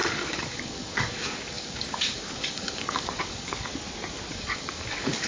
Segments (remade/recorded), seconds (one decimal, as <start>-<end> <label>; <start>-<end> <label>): 0.0-3.7 remade; 3.7-4.3 recorded; 4.3-5.3 remade